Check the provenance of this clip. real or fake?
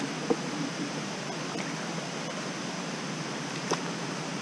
real